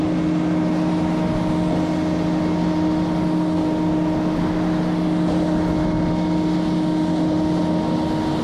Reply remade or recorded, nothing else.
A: recorded